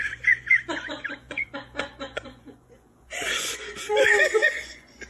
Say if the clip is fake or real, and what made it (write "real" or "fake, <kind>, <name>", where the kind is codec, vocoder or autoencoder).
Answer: fake, vocoder, Vocos